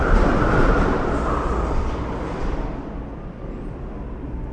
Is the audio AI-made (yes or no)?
no